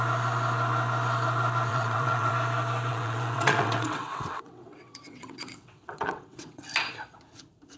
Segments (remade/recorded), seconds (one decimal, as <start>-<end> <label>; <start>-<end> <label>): 0.0-1.7 recorded; 1.7-2.3 remade; 2.3-2.9 recorded; 2.9-6.6 remade; 6.6-7.8 recorded